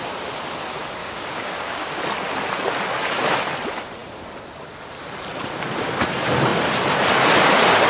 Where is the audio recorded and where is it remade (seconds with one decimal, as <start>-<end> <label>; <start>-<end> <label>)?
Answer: 0.0-1.0 recorded; 1.0-2.0 remade; 2.0-7.9 recorded